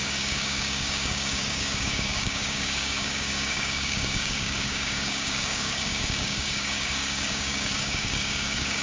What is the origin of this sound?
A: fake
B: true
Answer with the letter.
A